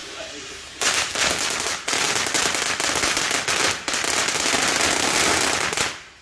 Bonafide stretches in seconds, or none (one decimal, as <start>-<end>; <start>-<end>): 0.0-6.2